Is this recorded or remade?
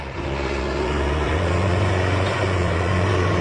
remade